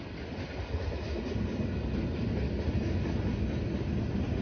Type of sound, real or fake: real